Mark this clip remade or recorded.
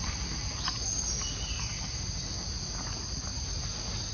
recorded